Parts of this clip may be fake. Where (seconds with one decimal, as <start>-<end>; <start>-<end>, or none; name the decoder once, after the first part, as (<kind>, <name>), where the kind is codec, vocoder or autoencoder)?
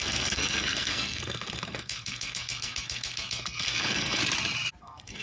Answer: 0.0-4.2 (codec, SNAC); 4.8-5.2